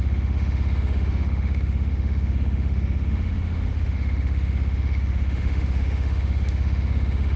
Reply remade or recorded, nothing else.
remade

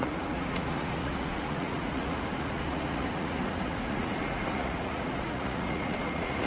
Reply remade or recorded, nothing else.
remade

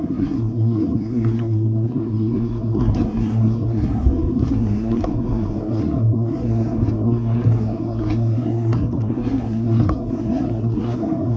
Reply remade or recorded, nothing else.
remade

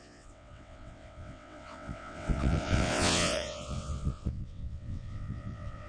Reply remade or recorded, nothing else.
remade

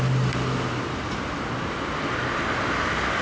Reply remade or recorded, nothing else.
recorded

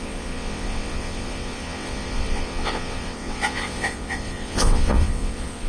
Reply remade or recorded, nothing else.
remade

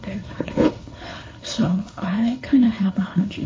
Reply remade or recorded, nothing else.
remade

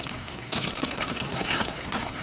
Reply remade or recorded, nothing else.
remade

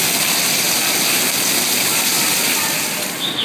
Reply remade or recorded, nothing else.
recorded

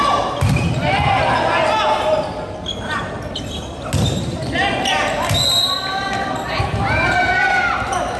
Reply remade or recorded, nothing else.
recorded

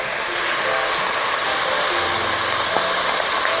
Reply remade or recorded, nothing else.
recorded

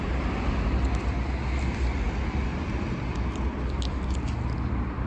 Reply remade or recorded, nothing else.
recorded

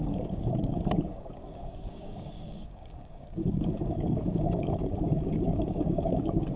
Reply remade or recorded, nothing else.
remade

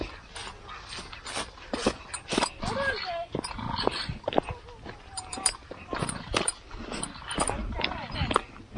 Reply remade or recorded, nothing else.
recorded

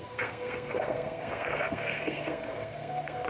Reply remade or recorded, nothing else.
remade